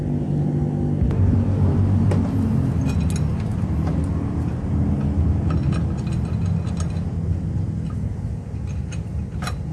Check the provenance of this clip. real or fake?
real